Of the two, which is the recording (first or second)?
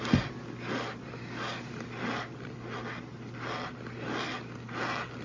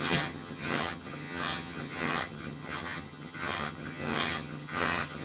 first